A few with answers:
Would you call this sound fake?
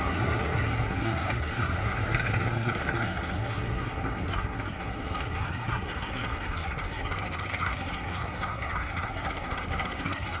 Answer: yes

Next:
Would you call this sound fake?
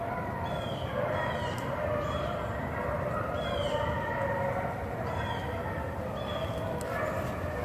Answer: no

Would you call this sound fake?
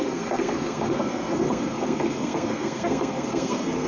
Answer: yes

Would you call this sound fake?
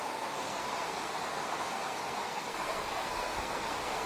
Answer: yes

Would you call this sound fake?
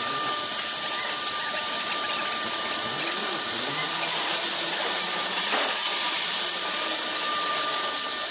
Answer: no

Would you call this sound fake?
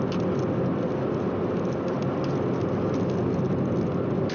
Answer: no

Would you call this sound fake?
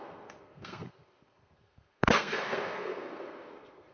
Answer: yes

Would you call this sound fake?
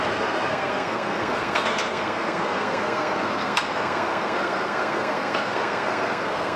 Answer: yes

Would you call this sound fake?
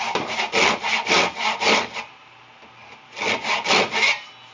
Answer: no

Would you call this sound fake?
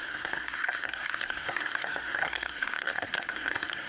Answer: yes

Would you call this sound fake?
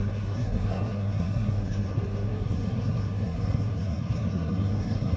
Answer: yes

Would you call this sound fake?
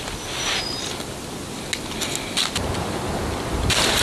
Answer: no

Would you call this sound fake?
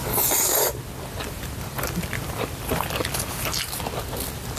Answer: no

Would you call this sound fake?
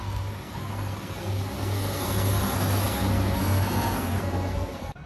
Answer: yes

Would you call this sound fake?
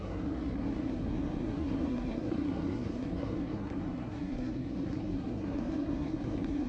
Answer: yes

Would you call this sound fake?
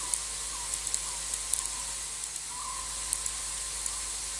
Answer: no